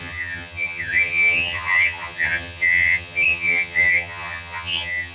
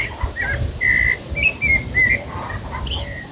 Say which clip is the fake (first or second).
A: first